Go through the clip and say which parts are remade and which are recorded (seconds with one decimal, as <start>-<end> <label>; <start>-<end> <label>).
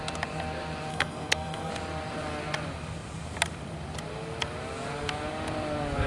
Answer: 0.0-0.9 recorded; 0.9-1.7 remade; 1.7-6.1 recorded